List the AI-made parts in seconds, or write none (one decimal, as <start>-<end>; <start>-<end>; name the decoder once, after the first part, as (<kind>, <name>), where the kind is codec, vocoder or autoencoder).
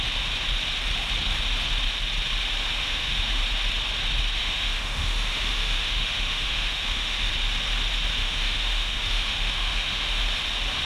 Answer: 2.8-3.4 (autoencoder, DAC-VAE); 4.4-7.3; 8.2-10.2